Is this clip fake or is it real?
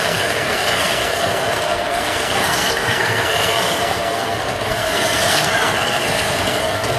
fake